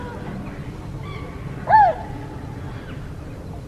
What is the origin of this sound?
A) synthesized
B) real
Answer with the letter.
B